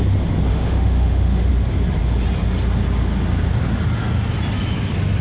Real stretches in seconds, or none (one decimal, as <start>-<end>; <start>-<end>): 0.0-0.5; 1.5-5.2